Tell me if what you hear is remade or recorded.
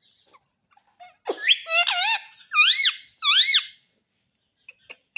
recorded